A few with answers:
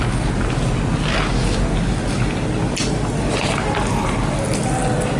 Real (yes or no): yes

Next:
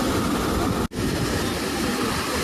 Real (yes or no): yes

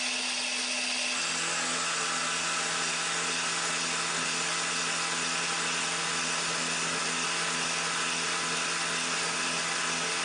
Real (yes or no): yes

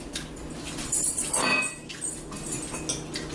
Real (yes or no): yes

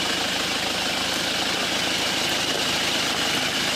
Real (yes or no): yes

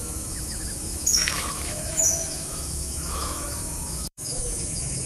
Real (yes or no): no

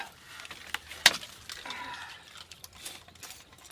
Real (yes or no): yes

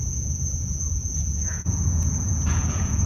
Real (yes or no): no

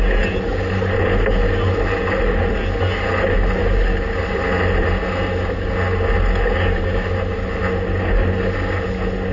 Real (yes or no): yes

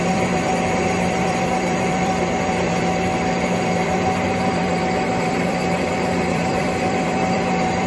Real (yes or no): no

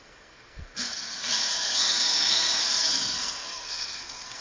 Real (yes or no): no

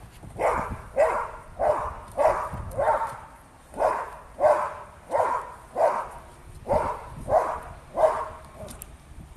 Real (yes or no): yes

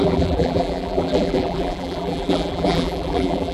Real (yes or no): no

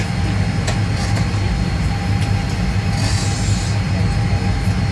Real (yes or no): yes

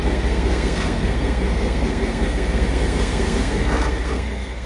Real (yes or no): no